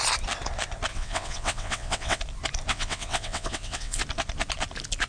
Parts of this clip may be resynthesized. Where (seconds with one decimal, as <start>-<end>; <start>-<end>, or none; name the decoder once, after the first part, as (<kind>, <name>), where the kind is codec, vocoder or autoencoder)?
0.9-2.2 (vocoder, WaveNeXt); 2.7-4.0